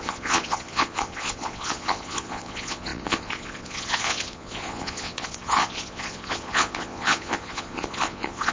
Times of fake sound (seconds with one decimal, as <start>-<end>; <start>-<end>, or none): 0.0-8.5